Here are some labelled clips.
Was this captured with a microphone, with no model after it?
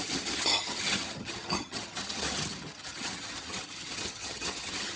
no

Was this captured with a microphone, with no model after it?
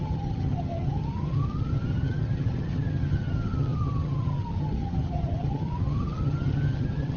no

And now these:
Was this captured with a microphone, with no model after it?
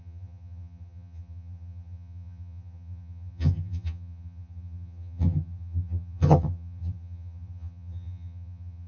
no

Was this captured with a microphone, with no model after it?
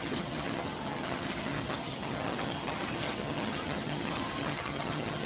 no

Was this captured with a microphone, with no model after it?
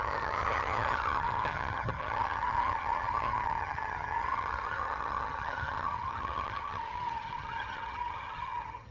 no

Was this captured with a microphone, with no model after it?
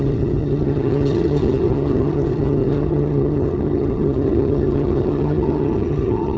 no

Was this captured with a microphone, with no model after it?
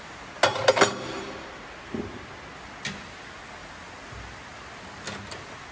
yes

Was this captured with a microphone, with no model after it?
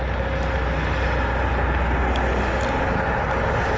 yes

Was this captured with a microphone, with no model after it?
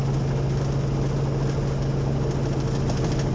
yes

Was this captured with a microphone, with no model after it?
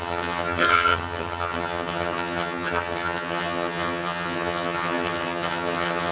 no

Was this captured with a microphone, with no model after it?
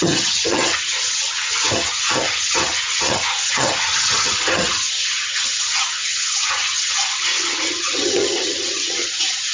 no